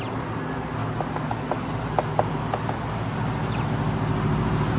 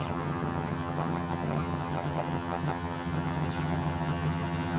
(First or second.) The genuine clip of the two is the first